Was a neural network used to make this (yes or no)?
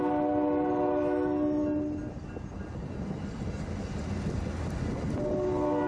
no